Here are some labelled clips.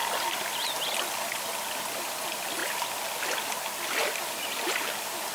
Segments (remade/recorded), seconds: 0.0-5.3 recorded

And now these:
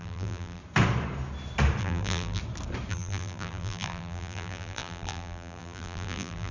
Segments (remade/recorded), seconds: 0.0-0.6 remade; 0.6-1.8 recorded; 1.8-2.4 remade; 2.4-2.9 recorded; 2.9-6.5 remade